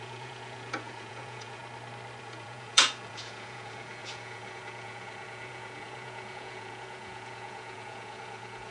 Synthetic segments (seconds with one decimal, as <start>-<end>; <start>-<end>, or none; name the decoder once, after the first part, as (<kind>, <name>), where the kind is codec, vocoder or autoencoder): 0.0-1.6 (vocoder, Vocos); 2.2-8.7